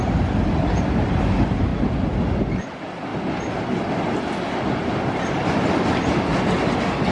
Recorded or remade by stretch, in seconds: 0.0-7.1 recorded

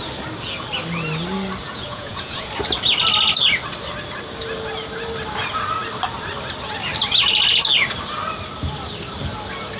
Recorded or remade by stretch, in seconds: 0.0-1.6 recorded; 1.6-2.5 remade; 2.5-9.8 recorded

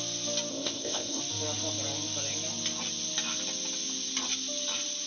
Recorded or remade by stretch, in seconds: 0.0-0.5 recorded; 0.5-1.2 remade; 1.2-5.1 recorded

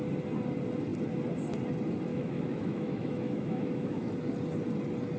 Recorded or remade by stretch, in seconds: 0.0-2.1 recorded; 2.1-4.1 remade; 4.1-5.2 recorded

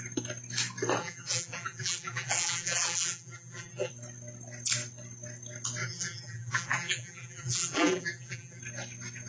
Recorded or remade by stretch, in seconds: 0.0-1.0 recorded; 1.0-3.9 remade; 3.9-5.8 recorded; 5.8-8.6 remade; 8.6-9.3 recorded